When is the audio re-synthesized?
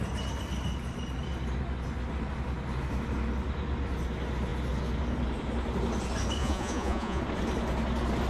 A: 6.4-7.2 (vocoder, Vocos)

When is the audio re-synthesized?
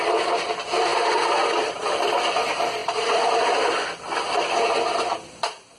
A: none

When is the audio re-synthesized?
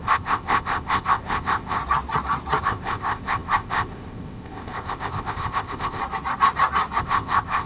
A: 0.0-1.8 (codec, ZipCodec); 2.6-6.0; 7.0-7.7